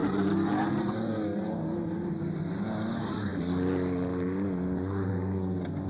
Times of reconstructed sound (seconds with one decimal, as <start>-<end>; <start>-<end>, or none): 0.0-1.1